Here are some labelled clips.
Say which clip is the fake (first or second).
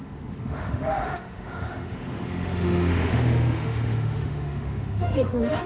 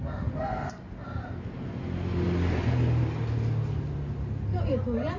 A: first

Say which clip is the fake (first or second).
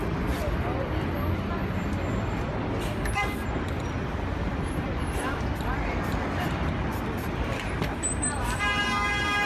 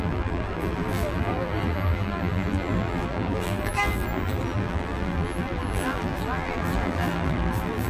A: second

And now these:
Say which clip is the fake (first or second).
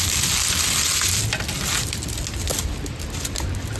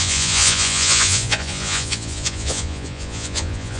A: second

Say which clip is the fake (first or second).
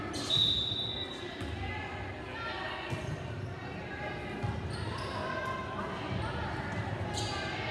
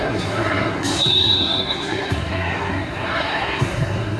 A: second